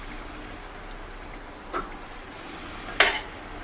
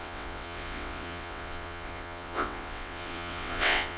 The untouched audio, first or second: first